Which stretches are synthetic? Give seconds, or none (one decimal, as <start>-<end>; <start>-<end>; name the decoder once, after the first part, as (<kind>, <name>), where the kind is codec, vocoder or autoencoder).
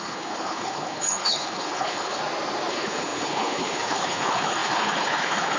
0.0-2.2 (codec, HILCodec); 2.7-5.6